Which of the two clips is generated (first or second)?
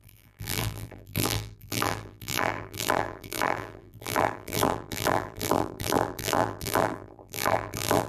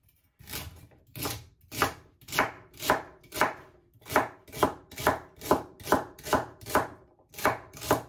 first